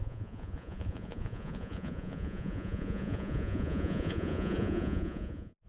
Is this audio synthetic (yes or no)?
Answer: yes